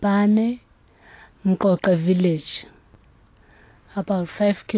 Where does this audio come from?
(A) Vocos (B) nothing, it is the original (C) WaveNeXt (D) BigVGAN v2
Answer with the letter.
B